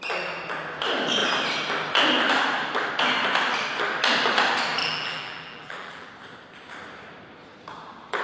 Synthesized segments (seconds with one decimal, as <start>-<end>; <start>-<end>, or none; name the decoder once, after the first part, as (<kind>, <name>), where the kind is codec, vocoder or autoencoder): 4.8-6.1 (vocoder, BigVGAN v2)